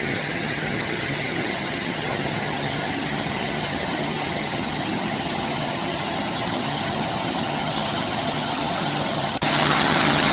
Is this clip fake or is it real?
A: fake